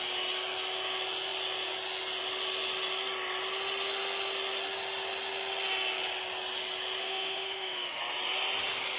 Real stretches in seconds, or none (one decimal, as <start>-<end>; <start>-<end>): 0.0-7.0; 8.0-9.0